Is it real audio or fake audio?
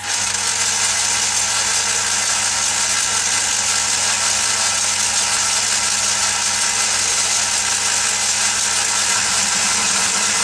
real